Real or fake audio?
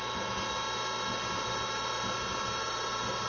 real